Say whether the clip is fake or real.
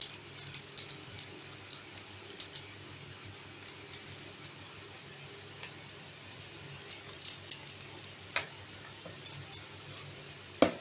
real